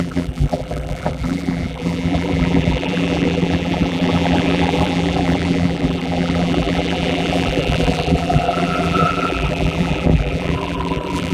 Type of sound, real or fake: fake